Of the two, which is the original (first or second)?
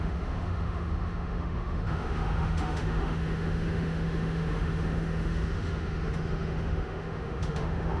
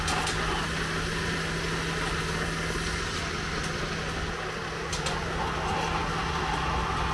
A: second